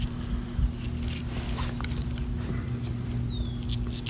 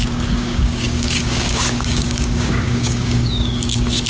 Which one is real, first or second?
first